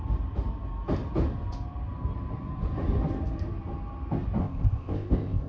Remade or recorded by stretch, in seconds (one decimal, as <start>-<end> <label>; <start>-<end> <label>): 0.0-4.4 recorded; 4.4-5.5 remade